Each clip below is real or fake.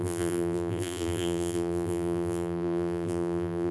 fake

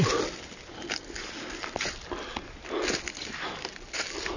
real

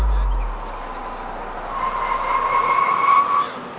real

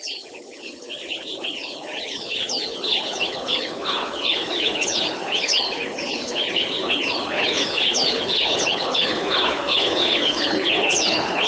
fake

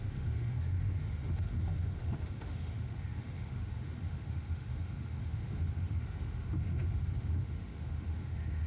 fake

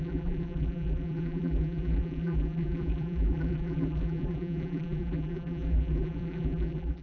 fake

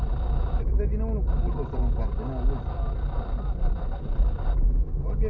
real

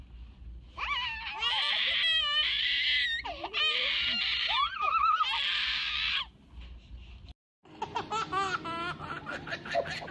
real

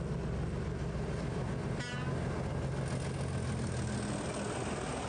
real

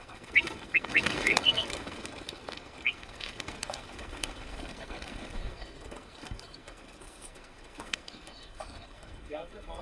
fake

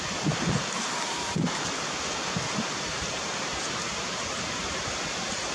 real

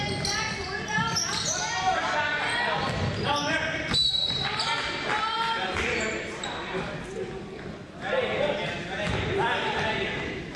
real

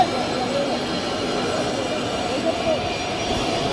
real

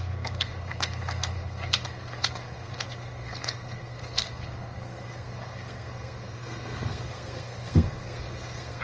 fake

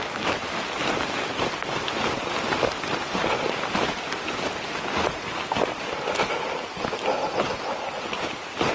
real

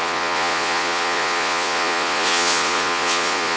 fake